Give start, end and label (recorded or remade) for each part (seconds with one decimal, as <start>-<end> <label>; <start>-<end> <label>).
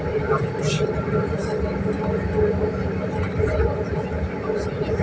0.0-5.0 recorded